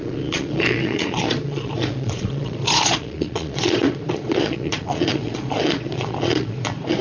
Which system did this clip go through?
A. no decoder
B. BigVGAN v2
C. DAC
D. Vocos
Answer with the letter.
D